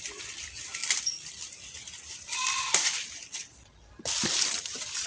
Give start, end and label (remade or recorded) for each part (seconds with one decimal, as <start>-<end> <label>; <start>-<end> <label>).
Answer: 0.0-5.1 recorded